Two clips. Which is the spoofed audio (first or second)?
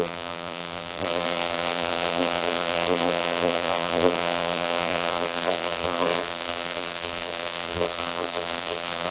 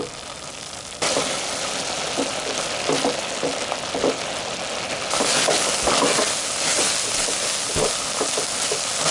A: first